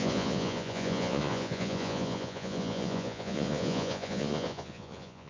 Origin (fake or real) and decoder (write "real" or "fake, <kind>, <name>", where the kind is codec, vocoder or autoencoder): fake, vocoder, Vocos